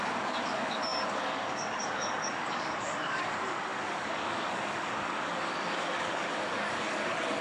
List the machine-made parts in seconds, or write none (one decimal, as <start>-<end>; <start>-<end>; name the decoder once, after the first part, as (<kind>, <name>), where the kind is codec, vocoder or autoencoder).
0.0-7.4 (codec, DAC)